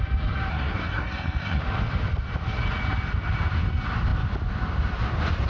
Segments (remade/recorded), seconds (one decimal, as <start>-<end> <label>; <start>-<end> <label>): 0.0-0.5 recorded; 0.5-1.6 remade; 1.6-5.5 recorded